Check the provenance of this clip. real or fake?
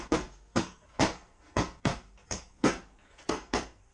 fake